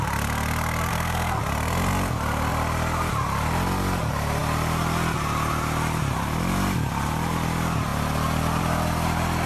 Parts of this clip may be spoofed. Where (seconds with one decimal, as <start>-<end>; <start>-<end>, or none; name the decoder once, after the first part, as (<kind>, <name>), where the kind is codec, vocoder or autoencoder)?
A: 0.9-1.4 (codec, SNAC)